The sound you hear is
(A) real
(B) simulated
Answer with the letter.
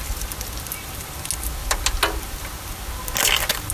A